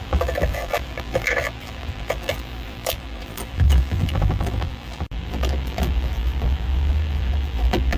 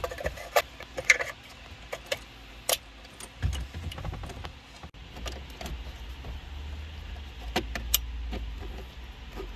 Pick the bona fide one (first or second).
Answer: second